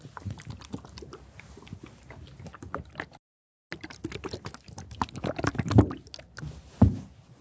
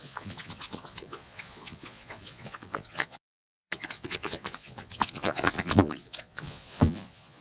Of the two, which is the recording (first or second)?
first